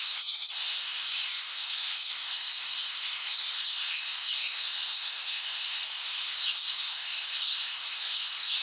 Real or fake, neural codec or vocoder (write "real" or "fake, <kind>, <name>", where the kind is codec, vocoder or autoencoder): fake, codec, SNAC